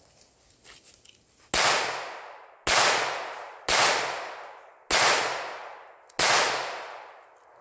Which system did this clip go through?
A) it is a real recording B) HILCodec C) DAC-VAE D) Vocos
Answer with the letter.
A